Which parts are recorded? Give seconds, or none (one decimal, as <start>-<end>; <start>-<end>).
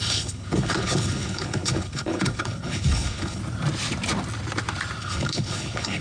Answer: 3.4-5.0